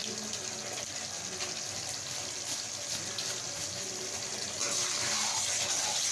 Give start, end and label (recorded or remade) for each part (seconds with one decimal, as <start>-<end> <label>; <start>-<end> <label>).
0.0-6.1 recorded